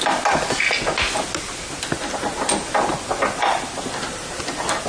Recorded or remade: recorded